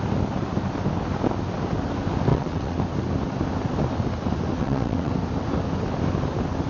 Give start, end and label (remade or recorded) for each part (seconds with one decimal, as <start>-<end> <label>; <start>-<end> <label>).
0.0-2.3 recorded; 2.3-2.8 remade; 2.8-4.6 recorded; 4.6-5.1 remade; 5.1-6.7 recorded